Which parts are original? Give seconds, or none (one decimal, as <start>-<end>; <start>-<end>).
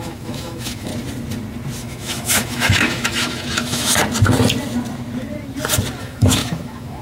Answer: 0.9-1.8; 4.0-6.0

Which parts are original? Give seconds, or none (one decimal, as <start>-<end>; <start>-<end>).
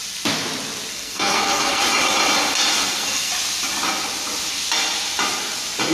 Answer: 0.0-0.9; 1.8-2.7; 3.3-5.9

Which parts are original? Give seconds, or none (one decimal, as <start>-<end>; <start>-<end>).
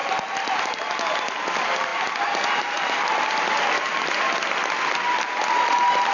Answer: 0.0-6.1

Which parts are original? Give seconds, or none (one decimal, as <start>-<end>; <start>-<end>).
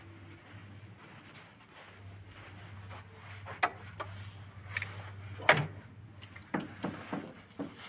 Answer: 0.0-7.9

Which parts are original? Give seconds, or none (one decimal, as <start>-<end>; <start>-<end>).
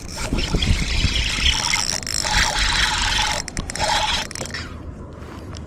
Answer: 0.4-3.8; 4.5-5.7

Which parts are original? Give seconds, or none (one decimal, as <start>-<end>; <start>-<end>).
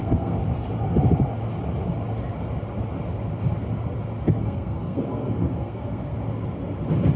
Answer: 0.4-4.4; 6.1-7.2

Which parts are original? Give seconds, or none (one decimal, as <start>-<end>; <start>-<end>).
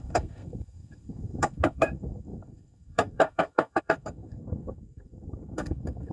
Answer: none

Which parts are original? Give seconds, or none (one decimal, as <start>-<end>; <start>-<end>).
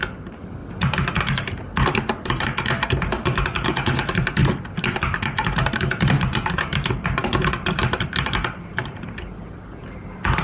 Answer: 0.6-1.2; 4.4-4.9